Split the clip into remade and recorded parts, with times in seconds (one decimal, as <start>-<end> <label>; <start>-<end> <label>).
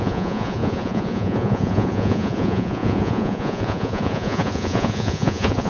0.0-5.7 remade